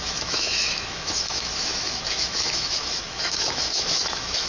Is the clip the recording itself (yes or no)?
no